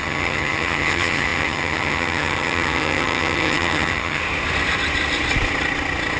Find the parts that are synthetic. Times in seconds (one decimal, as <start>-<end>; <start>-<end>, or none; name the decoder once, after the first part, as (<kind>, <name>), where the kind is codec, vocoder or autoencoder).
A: 0.0-4.2 (vocoder, HiFi-GAN)